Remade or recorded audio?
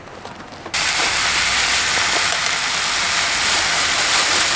recorded